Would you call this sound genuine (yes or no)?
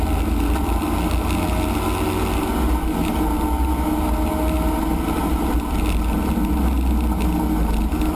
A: yes